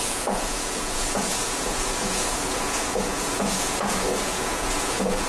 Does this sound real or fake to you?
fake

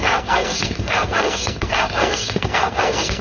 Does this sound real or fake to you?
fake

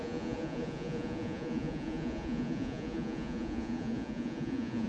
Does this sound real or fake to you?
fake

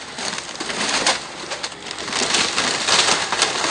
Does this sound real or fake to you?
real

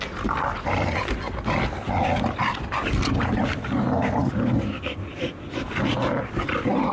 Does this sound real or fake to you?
real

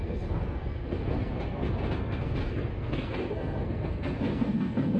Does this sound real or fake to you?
fake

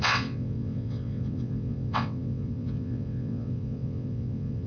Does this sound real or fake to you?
fake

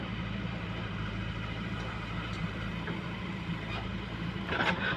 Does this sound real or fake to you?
fake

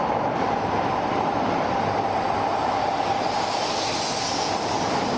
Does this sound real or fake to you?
real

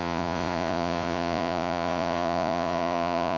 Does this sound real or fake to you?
fake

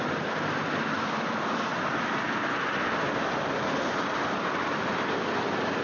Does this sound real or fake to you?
real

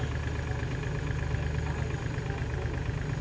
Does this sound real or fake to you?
real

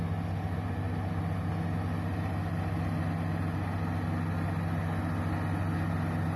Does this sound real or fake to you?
real